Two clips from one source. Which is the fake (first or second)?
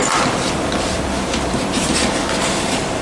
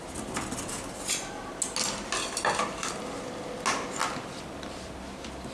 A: first